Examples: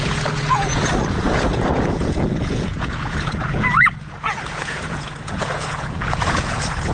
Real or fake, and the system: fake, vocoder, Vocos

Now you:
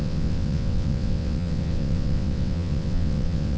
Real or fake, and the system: fake, vocoder, WaveNeXt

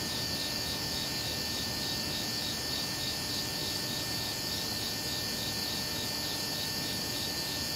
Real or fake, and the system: real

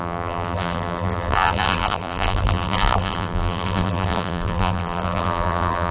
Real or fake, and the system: fake, vocoder, BigVGAN v2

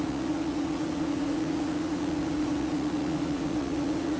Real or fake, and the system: fake, vocoder, Vocos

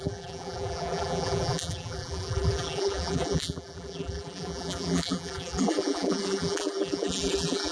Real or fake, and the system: fake, vocoder, BigVGAN v2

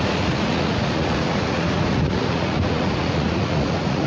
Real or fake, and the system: fake, vocoder, Vocos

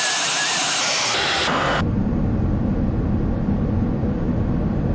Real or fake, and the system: real